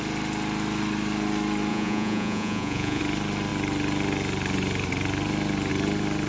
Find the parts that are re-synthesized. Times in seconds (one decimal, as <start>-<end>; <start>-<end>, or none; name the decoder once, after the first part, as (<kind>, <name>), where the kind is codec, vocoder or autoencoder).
1.7-3.0 (vocoder, Vocos)